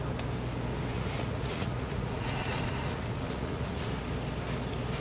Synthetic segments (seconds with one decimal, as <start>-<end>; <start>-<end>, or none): 0.9-3.9